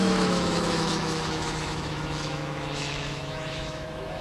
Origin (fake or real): fake